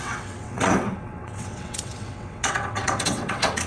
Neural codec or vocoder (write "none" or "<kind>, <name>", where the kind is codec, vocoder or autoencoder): vocoder, WaveNeXt